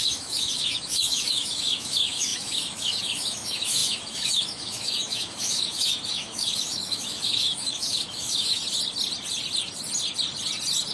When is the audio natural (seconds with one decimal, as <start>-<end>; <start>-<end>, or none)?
8.6-10.9